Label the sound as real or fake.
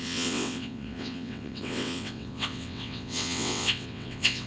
fake